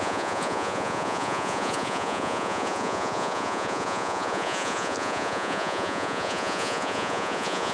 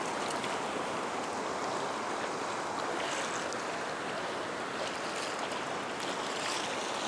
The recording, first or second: second